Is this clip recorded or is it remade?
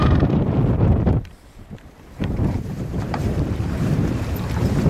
remade